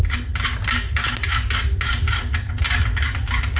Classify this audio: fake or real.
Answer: real